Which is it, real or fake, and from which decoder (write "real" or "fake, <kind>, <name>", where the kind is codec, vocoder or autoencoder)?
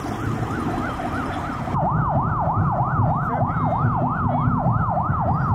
real